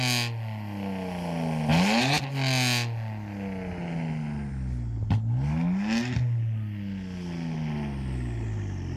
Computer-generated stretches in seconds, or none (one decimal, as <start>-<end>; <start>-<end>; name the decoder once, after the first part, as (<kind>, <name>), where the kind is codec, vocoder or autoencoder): none